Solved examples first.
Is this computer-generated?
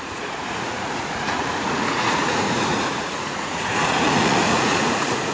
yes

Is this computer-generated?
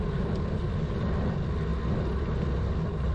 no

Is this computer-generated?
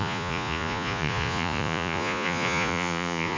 yes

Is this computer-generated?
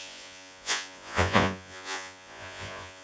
yes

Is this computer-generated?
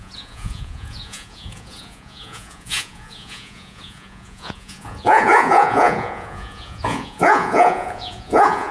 yes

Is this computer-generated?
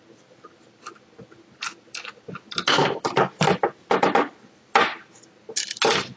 no